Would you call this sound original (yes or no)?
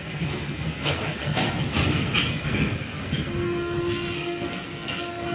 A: no